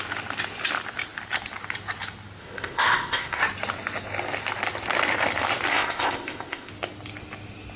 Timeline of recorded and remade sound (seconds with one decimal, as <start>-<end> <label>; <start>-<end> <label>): 0.0-2.4 recorded; 2.4-3.4 remade; 3.4-5.7 recorded; 5.7-6.7 remade; 6.7-7.8 recorded